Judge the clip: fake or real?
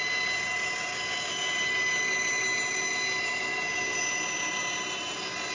real